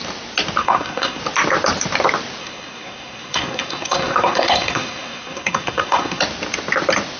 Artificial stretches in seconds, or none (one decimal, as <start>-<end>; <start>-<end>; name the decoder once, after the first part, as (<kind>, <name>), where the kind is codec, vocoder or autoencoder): 0.6-1.2 (codec, SNAC); 2.4-6.2